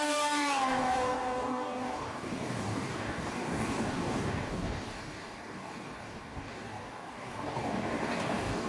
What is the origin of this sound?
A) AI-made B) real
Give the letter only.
A